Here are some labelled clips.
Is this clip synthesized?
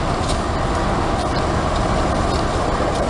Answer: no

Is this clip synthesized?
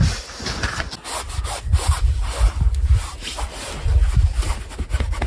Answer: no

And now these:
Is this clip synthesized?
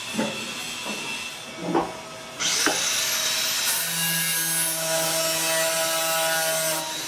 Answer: no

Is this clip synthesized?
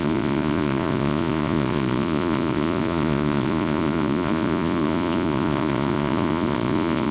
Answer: yes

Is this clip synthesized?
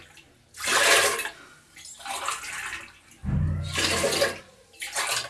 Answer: no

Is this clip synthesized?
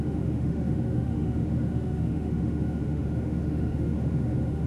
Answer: yes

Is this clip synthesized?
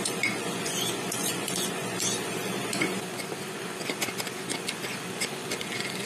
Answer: yes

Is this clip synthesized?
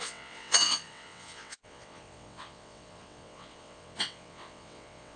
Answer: yes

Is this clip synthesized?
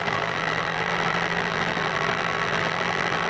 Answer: yes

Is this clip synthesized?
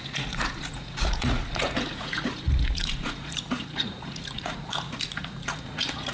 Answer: yes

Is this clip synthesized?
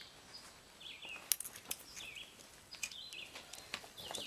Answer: no